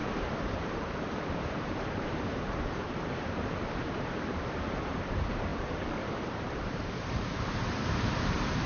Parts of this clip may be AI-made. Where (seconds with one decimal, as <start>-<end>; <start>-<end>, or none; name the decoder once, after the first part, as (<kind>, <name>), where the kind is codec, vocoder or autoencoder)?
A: 0.0-5.5 (vocoder, BigVGAN v2); 6.1-8.7